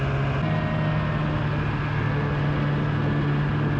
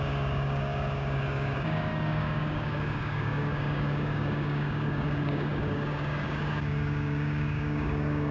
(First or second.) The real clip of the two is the first